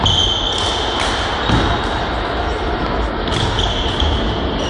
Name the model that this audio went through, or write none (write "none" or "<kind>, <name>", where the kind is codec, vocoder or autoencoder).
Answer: none